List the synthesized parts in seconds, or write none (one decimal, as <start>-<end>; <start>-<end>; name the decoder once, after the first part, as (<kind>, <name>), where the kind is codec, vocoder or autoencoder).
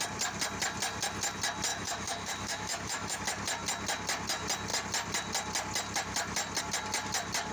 1.7-3.2 (autoencoder, DAC-VAE)